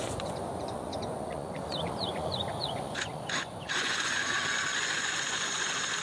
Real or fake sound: fake